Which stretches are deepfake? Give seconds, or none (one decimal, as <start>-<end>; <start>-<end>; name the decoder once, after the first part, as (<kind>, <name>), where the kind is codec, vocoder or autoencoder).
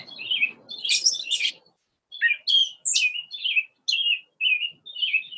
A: 0.8-1.5 (vocoder, HiFi-GAN)